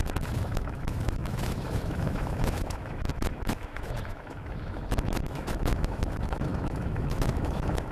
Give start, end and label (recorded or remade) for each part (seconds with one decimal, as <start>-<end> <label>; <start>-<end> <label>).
0.0-7.9 remade